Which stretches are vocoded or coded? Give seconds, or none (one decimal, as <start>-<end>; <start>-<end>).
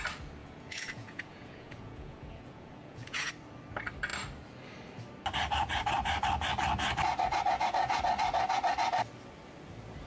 0.4-3.3